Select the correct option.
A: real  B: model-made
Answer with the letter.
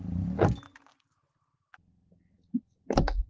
A